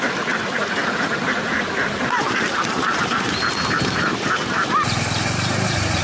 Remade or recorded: remade